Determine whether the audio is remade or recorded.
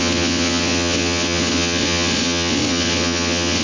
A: remade